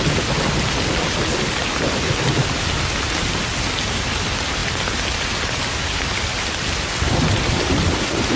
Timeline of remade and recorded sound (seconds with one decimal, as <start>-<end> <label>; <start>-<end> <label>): 0.0-8.4 recorded